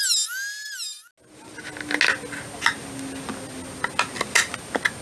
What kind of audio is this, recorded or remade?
recorded